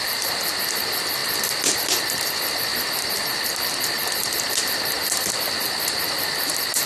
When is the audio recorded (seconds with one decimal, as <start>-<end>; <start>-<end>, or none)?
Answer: 0.0-6.9